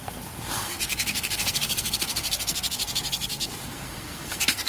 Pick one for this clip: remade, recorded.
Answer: remade